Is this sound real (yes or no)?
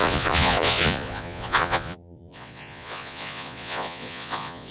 no